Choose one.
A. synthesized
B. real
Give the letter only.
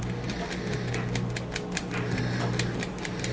B